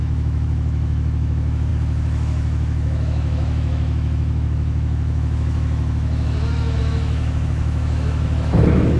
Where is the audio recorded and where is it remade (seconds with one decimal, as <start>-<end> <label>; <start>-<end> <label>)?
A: 0.0-9.0 remade